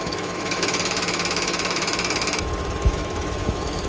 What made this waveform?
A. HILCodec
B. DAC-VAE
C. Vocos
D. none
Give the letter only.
B